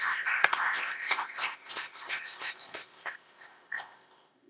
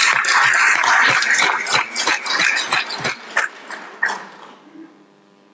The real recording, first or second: second